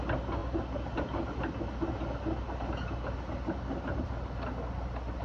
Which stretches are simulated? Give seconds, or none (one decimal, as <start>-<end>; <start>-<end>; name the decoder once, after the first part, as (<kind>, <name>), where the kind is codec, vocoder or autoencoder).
none